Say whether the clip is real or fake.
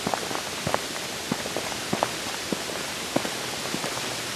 real